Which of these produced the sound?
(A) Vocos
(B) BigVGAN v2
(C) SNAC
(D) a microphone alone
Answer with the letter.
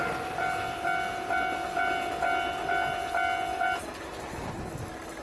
D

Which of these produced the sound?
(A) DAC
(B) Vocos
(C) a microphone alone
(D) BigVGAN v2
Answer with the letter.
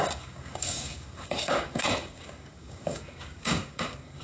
A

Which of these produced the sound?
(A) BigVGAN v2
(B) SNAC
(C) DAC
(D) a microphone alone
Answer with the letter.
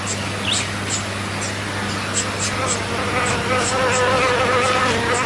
D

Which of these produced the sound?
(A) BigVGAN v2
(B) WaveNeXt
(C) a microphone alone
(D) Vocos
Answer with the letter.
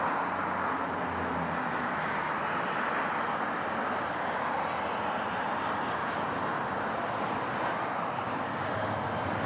C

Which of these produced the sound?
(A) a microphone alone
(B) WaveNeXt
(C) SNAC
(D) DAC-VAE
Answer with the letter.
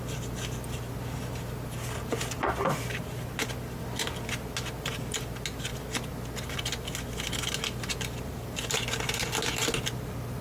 A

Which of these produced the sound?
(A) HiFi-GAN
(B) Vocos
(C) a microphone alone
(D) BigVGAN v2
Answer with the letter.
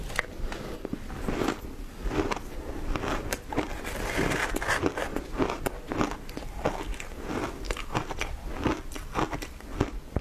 C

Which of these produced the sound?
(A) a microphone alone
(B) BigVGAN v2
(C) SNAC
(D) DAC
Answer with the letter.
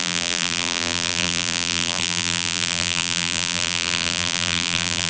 B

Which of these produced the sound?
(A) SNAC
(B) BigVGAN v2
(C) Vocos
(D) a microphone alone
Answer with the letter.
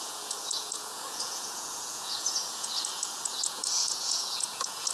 C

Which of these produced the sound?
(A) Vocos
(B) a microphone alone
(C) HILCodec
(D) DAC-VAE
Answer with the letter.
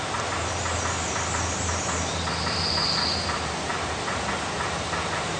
B